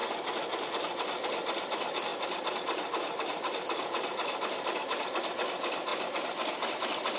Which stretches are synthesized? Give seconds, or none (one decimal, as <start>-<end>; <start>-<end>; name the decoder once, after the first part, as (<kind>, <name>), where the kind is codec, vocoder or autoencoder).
2.1-2.6 (vocoder, BigVGAN v2)